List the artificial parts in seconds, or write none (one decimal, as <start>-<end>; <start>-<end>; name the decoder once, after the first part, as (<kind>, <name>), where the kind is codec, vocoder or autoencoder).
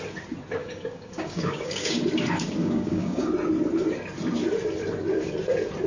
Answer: 0.6-2.0 (codec, DAC); 2.6-3.3